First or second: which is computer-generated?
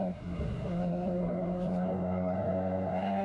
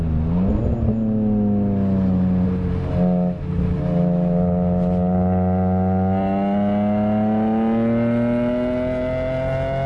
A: first